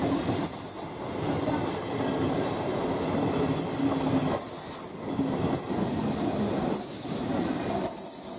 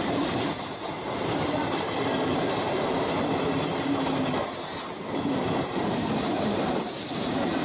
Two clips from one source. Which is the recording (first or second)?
first